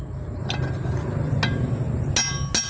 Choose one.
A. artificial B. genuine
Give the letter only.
B